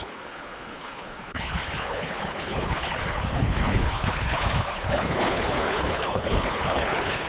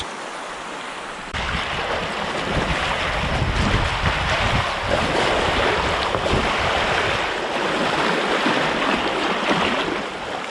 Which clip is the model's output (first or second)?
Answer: first